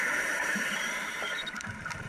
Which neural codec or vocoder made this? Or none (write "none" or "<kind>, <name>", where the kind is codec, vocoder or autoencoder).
vocoder, BigVGAN v2